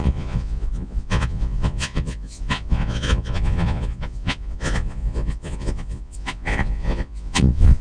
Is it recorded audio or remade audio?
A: remade